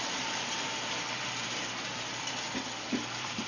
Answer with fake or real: fake